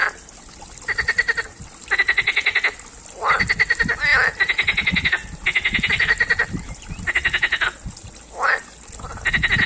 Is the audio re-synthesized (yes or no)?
no